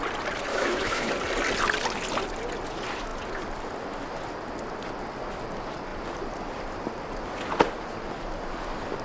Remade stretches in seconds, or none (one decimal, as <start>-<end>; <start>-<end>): 0.5-1.1